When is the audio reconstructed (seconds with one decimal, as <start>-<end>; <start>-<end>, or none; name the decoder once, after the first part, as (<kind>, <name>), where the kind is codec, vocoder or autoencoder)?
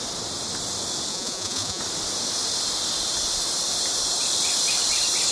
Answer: 1.1-1.8 (vocoder, Vocos)